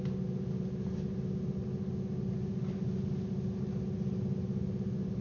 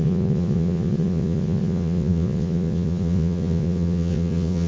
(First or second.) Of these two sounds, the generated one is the second